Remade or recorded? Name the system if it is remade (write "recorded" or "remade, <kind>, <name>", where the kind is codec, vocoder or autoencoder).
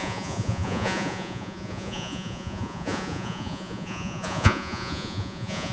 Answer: remade, vocoder, Vocos